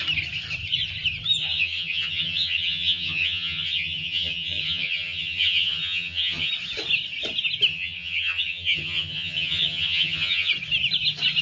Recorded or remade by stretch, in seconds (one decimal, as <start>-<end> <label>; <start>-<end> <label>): 0.0-1.4 recorded; 1.4-6.5 remade; 6.5-7.7 recorded; 7.7-10.5 remade; 10.5-11.4 recorded